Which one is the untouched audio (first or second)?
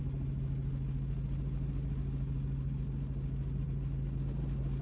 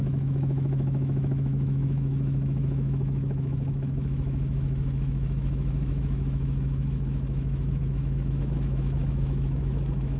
first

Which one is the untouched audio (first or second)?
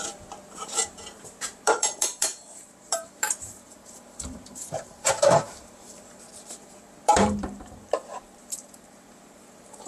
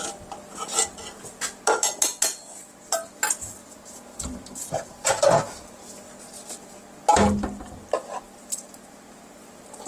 second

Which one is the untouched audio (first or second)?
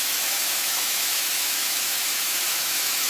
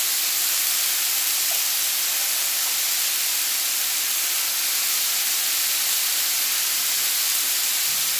second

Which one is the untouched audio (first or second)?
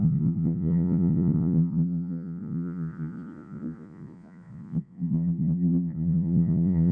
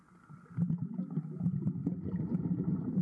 second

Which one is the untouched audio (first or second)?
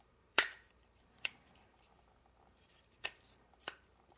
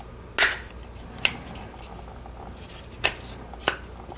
second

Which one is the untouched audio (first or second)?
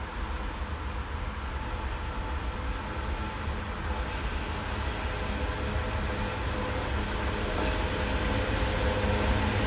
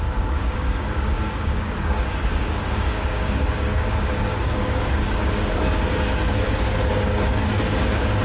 first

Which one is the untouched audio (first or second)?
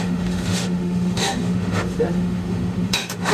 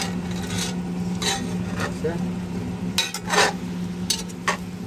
second